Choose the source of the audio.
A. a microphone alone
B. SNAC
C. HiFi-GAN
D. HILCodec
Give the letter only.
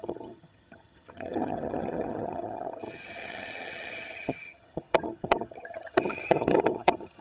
C